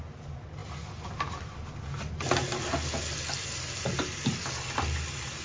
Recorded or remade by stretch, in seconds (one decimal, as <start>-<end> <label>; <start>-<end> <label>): 0.0-5.4 recorded